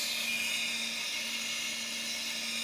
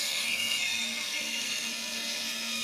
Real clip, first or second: first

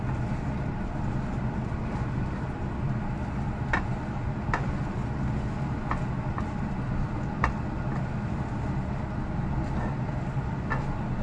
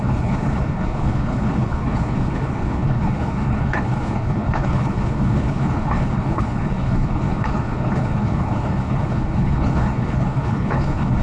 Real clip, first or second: first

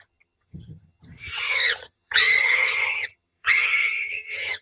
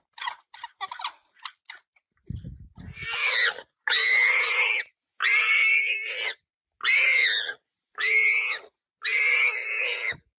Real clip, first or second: second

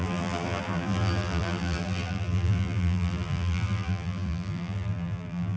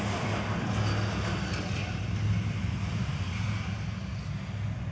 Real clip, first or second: second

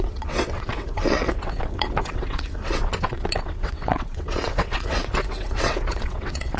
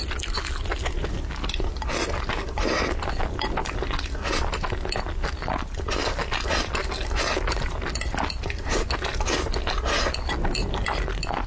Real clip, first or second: second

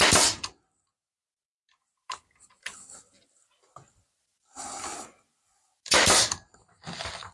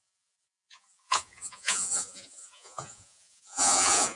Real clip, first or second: first